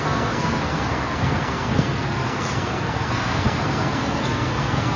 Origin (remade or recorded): remade